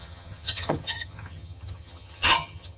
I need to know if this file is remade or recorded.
remade